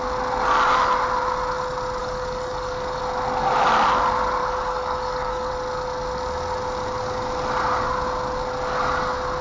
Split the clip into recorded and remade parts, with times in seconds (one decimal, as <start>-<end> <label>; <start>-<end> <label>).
0.0-2.0 recorded; 2.0-3.0 remade; 3.0-4.4 recorded; 4.4-5.5 remade; 5.5-9.4 recorded